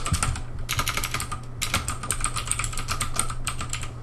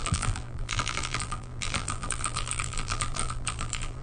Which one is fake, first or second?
second